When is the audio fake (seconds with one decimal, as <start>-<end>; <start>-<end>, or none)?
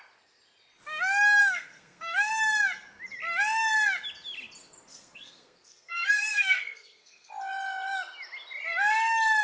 1.4-2.3; 4.9-7.3